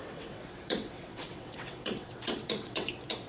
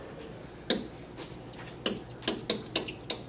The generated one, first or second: first